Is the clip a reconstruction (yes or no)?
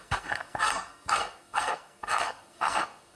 yes